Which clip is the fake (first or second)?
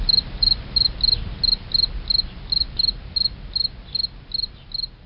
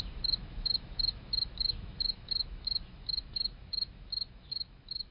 second